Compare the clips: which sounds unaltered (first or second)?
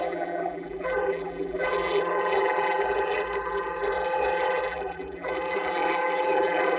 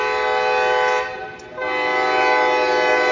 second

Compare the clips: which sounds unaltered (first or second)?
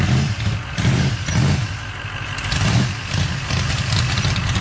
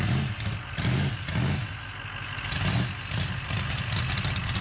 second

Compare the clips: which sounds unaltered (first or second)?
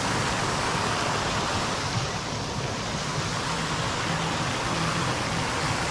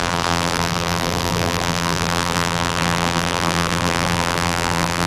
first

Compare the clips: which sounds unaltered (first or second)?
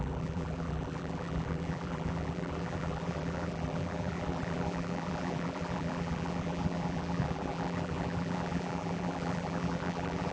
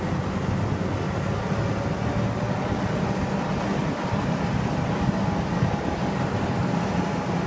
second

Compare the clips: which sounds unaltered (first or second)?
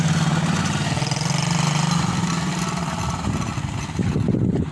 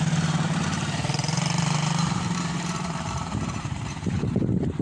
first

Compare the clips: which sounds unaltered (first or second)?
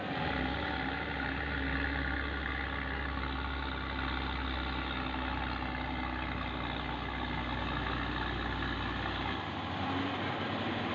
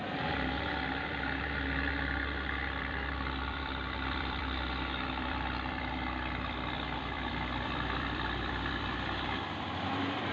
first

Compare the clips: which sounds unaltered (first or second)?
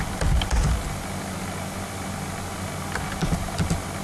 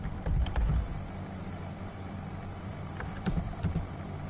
first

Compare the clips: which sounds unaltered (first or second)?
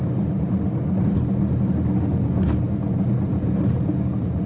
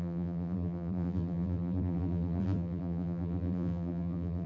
first